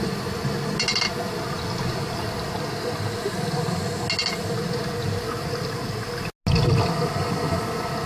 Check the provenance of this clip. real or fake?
real